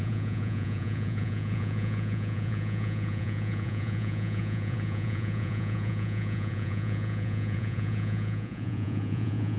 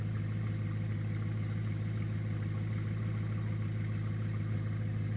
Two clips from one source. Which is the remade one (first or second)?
first